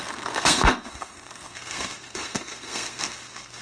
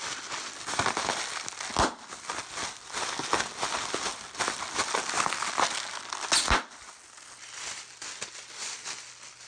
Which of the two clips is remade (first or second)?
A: first